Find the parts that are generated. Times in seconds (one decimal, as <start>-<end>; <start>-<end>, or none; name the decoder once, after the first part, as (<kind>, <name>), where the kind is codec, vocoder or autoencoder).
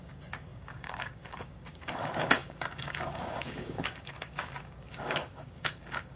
0.0-6.2 (codec, DAC)